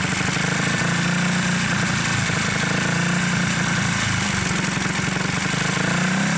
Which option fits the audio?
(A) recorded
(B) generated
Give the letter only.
A